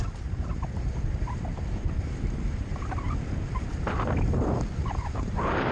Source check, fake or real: fake